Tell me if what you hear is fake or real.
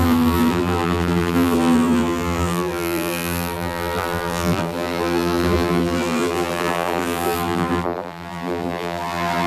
fake